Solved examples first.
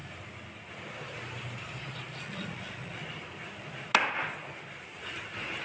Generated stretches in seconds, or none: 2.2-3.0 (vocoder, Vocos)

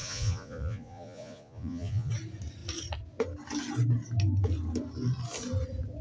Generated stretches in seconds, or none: 0.0-2.1 (vocoder, Vocos)

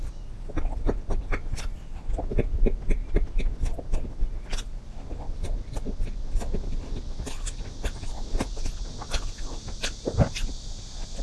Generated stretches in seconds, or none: none

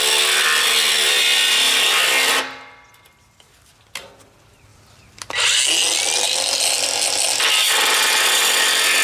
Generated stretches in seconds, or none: none

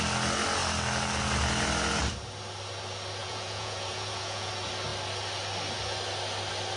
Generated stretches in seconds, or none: 3.2-4.5 (vocoder, Vocos)

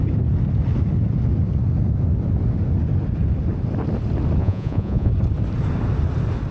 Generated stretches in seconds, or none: 4.4-5.1 (vocoder, Vocos)